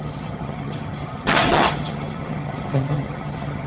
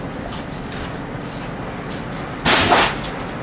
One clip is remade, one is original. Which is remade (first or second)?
first